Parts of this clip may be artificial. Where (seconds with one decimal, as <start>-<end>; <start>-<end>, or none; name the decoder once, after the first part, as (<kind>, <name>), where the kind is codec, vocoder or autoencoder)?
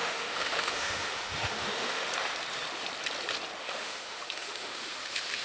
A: 0.0-2.1 (autoencoder, DAC-VAE); 3.6-5.4